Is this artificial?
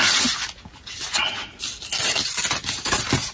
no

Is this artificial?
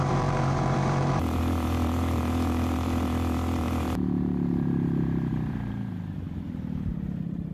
yes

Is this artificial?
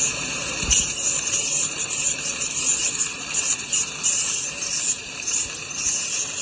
yes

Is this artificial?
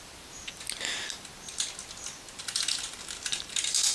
no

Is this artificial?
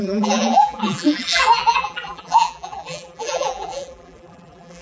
yes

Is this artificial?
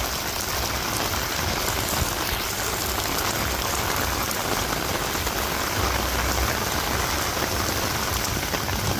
no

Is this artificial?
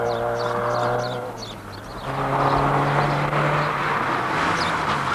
no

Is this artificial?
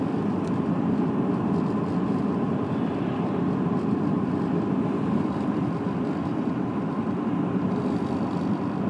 yes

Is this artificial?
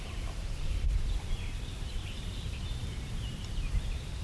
yes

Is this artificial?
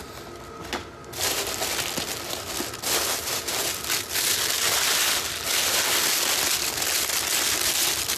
no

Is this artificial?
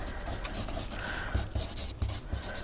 no